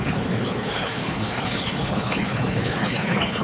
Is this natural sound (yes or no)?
no